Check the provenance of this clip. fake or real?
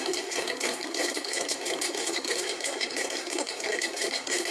fake